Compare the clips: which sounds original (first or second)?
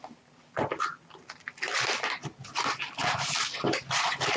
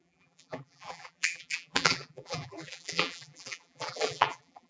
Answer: first